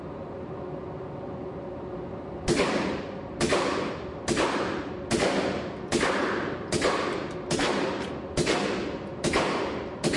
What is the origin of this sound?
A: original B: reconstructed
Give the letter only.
A